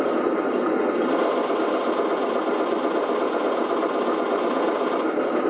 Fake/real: real